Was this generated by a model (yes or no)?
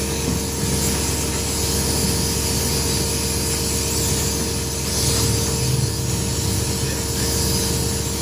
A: no